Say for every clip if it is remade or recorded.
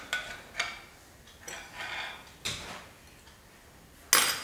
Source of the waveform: recorded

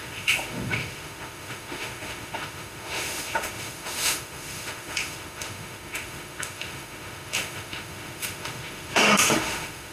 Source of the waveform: remade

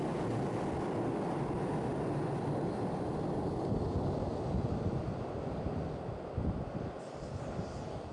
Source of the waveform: recorded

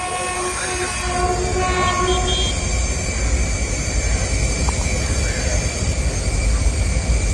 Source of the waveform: recorded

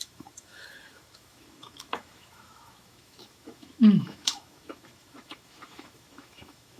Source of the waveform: remade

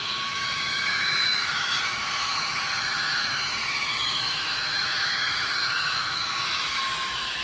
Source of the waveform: remade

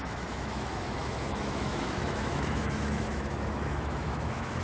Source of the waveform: remade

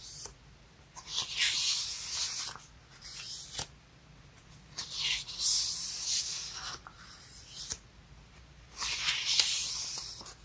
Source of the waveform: recorded